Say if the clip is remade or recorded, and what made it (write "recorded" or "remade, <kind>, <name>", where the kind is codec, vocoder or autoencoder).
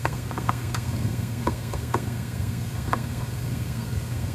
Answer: remade, codec, SNAC